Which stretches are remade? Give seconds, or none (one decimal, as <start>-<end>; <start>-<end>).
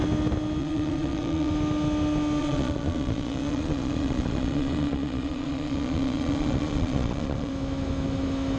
0.6-1.5; 2.4-7.5